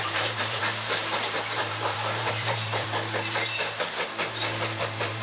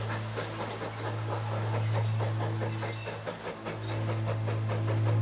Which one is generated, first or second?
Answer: first